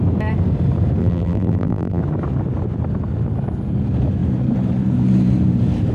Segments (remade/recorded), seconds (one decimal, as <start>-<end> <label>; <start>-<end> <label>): 0.0-1.0 recorded; 1.0-2.0 remade; 2.0-5.9 recorded